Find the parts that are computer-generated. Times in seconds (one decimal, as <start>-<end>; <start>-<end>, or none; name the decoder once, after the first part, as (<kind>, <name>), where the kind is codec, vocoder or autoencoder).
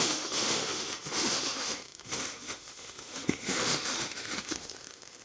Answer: 0.0-5.2 (autoencoder, DAC-VAE)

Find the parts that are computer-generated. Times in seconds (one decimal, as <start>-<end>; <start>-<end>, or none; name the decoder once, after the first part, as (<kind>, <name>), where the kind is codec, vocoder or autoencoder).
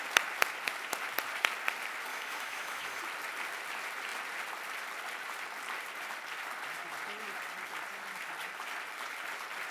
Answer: 2.1-3.0 (autoencoder, DAC-VAE)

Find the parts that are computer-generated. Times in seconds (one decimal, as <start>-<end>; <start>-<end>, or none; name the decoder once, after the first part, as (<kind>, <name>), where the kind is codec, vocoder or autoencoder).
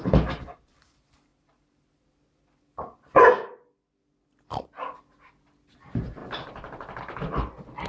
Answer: none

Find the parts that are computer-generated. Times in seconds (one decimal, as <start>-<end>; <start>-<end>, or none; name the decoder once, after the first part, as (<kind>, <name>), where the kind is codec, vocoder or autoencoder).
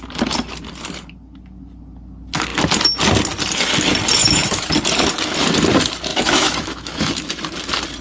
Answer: 4.2-4.7 (autoencoder, DAC-VAE); 6.1-7.3